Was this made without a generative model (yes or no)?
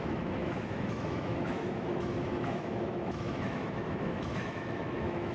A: no